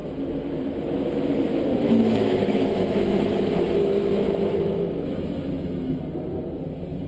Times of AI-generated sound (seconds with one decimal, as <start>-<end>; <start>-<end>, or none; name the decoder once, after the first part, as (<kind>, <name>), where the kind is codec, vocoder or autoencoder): 1.7-6.0 (autoencoder, DAC-VAE)